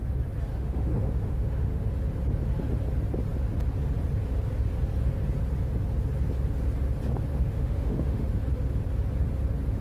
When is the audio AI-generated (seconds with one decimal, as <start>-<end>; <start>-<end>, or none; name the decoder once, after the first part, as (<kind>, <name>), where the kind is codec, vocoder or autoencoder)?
0.5-1.9 (autoencoder, DAC-VAE); 7.3-8.3